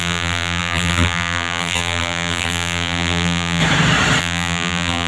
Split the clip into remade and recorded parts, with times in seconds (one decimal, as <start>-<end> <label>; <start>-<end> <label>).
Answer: 0.0-3.6 remade; 3.6-4.2 recorded; 4.2-5.1 remade